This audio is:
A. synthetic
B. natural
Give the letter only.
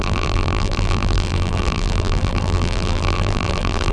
A